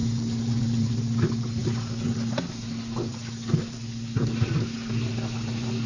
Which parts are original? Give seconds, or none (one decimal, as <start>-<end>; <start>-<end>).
0.0-5.9